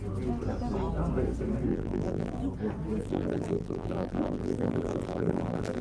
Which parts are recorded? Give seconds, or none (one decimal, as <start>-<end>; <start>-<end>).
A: 0.0-1.7; 2.4-3.0